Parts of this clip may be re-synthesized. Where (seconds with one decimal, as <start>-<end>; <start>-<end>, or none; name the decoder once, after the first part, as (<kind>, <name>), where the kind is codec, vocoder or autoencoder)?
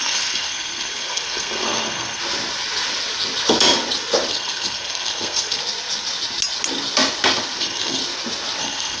0.0-2.2 (codec, SNAC); 4.3-5.6; 7.6-8.0; 8.6-9.0